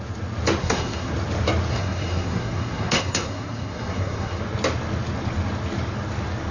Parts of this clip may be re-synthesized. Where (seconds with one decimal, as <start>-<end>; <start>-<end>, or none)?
0.6-1.1; 1.7-4.4